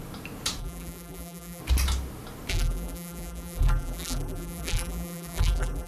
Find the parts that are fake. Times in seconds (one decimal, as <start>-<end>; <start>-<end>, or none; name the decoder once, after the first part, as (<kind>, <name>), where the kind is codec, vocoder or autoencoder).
0.6-1.6 (vocoder, BigVGAN v2); 2.5-5.9